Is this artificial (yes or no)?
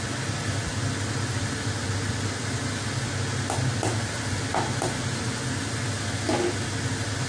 no